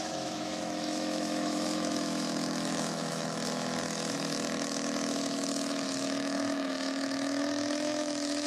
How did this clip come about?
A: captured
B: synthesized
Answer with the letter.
B